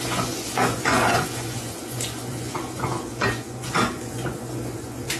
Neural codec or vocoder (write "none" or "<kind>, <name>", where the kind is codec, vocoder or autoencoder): vocoder, Vocos